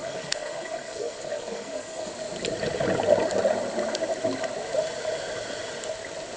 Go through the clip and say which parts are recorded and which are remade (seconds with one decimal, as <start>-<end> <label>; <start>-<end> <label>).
0.0-2.1 remade; 2.1-6.4 recorded